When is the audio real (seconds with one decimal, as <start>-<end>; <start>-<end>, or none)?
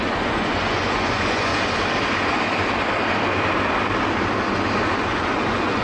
1.5-5.0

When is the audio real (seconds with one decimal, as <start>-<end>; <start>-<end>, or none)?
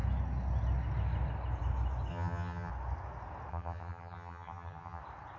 0.0-2.1; 2.7-3.5; 5.0-5.4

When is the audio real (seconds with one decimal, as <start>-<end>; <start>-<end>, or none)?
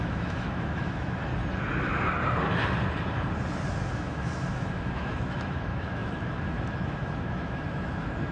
1.3-3.9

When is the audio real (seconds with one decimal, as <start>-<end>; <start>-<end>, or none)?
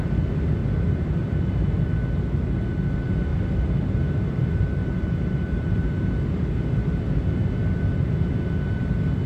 0.0-0.6; 1.1-3.3; 6.1-9.3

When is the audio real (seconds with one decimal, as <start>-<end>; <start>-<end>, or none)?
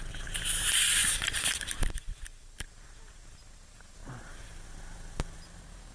0.0-1.0; 2.6-5.9